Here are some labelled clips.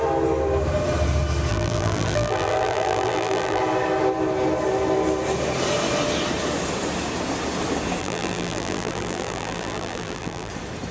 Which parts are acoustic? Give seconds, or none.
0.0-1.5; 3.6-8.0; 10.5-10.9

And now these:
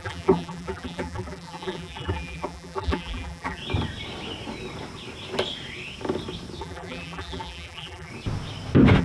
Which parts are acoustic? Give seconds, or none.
3.6-6.6; 8.1-9.0

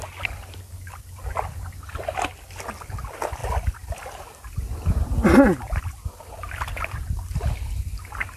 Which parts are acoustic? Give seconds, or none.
0.0-8.4